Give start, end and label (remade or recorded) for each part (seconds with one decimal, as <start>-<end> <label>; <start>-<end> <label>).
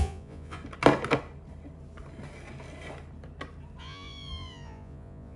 0.0-0.6 remade; 0.6-3.8 recorded; 3.8-5.4 remade